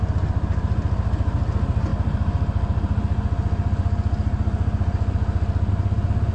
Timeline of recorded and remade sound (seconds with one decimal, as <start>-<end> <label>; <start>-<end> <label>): 0.0-6.3 recorded